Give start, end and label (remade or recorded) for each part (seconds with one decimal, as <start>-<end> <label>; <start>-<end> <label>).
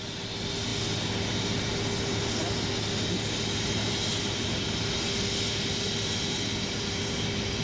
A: 0.0-7.6 recorded